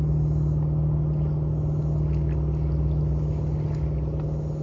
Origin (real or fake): real